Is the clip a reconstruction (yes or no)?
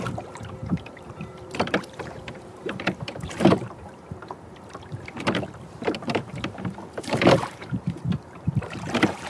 yes